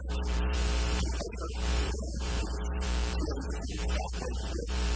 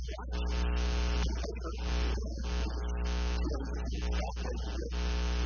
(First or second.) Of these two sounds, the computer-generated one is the first